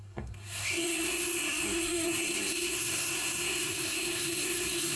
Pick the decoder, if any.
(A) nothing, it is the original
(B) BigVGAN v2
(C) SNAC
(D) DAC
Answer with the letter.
C